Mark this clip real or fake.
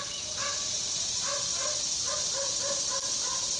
real